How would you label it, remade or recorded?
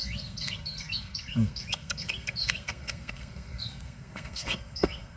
remade